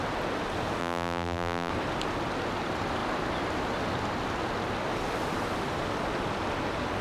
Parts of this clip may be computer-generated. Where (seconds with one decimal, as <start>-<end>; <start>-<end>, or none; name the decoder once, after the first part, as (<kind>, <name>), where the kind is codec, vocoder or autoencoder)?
0.8-1.7 (vocoder, BigVGAN v2)